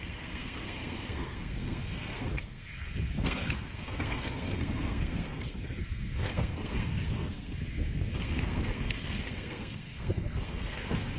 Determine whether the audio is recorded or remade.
remade